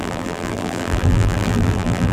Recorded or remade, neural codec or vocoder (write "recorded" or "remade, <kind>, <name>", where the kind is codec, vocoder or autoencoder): remade, vocoder, BigVGAN v2